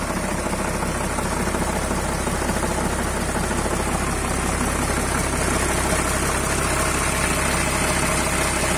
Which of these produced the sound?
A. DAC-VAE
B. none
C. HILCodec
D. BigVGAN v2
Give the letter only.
B